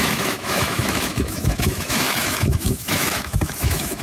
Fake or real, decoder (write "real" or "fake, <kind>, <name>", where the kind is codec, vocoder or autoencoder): fake, autoencoder, DAC-VAE